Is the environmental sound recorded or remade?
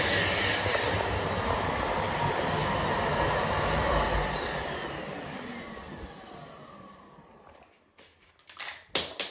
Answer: recorded